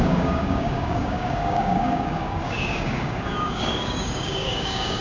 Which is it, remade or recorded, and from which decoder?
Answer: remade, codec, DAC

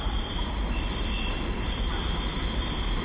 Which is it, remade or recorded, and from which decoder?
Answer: recorded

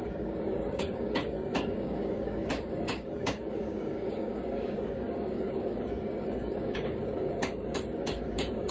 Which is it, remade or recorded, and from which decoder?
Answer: remade, codec, DAC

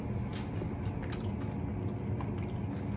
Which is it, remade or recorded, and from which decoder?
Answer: recorded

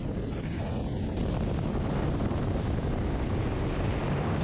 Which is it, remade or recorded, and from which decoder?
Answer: recorded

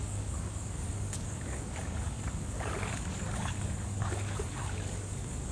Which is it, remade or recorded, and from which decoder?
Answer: remade, codec, DAC